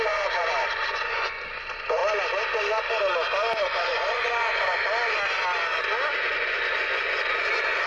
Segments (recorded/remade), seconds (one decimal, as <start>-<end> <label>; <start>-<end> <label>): 0.0-2.0 remade; 2.0-3.6 recorded; 3.6-4.8 remade; 4.8-6.3 recorded; 6.3-7.9 remade